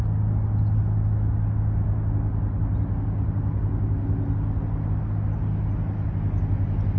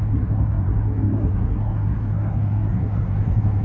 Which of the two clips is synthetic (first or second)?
second